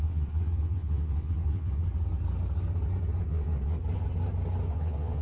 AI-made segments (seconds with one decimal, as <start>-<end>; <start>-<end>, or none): 0.0-1.8; 3.3-3.8; 4.7-5.2